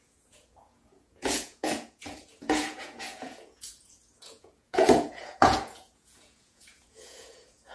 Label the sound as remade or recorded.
remade